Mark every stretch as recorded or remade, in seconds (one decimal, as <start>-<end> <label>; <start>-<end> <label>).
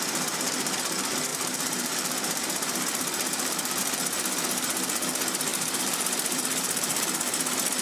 0.0-1.3 recorded; 1.3-3.8 remade; 3.8-5.5 recorded; 5.5-7.1 remade; 7.1-7.8 recorded